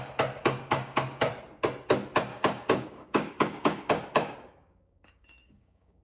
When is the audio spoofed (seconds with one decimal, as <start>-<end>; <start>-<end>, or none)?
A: 0.4-1.3; 2.3-6.0